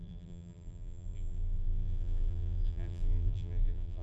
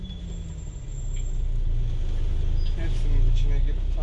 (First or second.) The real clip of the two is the second